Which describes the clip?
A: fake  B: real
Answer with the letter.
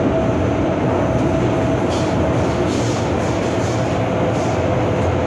B